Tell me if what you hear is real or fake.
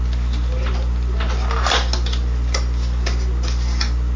real